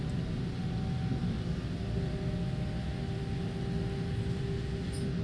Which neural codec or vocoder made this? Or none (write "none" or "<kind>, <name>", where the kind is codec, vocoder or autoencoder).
none